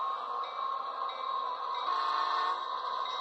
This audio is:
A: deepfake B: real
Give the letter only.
A